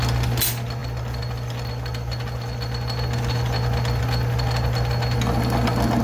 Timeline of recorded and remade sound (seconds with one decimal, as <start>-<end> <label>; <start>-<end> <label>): 0.0-6.0 recorded

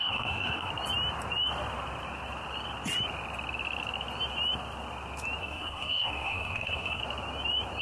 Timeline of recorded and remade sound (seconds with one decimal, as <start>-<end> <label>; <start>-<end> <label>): 0.0-0.7 remade; 0.7-5.4 recorded; 5.4-7.0 remade; 7.0-7.8 recorded